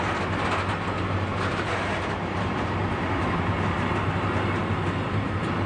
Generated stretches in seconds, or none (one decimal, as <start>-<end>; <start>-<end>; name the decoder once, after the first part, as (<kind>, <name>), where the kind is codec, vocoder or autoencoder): none